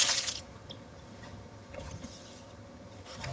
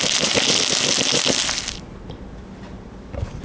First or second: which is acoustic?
second